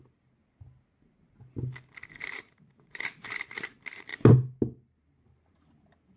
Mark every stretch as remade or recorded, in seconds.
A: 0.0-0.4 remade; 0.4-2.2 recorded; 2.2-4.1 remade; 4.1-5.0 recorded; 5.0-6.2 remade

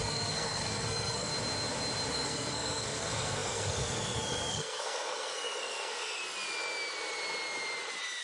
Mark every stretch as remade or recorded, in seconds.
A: 0.0-1.3 remade; 1.3-2.1 recorded; 2.1-6.2 remade; 6.2-8.2 recorded

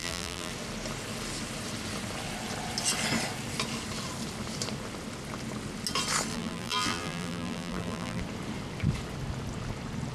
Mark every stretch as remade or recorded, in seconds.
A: 0.0-0.5 remade; 0.5-6.3 recorded; 6.3-8.2 remade; 8.2-10.1 recorded